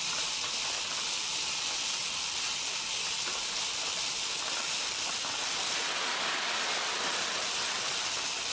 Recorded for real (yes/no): yes